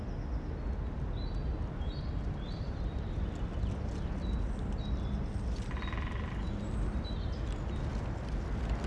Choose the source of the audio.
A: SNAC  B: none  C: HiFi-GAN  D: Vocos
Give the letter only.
B